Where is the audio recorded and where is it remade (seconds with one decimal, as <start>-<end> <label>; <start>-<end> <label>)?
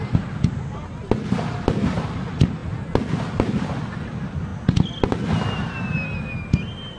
0.0-7.0 recorded